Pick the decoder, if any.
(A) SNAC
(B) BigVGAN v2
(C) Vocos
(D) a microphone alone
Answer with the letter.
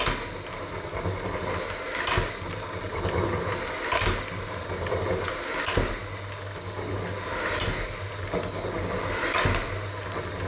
D